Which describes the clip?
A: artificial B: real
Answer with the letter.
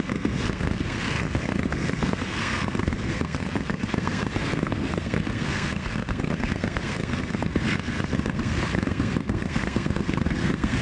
A